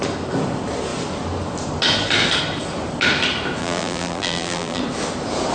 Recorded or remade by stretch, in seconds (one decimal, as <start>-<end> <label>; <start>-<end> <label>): 0.0-3.6 recorded; 3.6-4.8 remade; 4.8-5.5 recorded

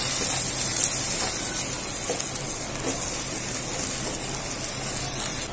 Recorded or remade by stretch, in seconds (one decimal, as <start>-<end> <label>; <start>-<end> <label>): 0.0-5.5 recorded

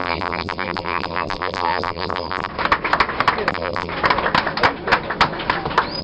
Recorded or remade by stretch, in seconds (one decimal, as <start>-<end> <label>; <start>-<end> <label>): 0.0-2.5 remade; 2.5-3.5 recorded; 3.5-3.9 remade; 3.9-6.0 recorded

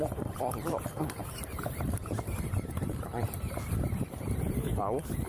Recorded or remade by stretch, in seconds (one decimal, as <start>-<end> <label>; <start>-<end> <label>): 0.0-5.3 remade

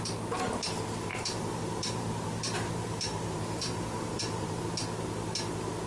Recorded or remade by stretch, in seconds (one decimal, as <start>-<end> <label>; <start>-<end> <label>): 0.0-1.1 recorded; 1.1-4.6 remade; 4.6-5.9 recorded

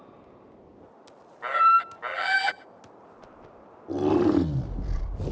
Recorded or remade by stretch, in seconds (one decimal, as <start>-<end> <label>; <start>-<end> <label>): 0.0-2.1 recorded; 2.1-2.6 remade; 2.6-5.3 recorded

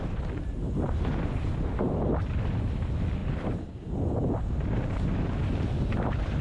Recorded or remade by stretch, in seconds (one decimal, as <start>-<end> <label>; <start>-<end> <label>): 0.0-0.6 recorded; 0.6-2.0 remade; 2.0-3.2 recorded; 3.2-3.9 remade; 3.9-6.4 recorded

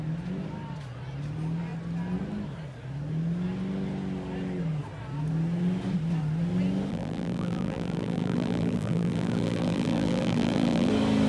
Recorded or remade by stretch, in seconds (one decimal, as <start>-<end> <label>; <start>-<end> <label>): 0.0-6.9 recorded; 6.9-10.9 remade; 10.9-11.3 recorded